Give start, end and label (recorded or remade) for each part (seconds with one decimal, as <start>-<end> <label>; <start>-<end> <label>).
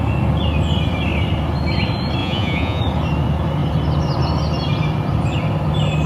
0.0-2.2 recorded; 2.2-2.8 remade; 2.8-6.1 recorded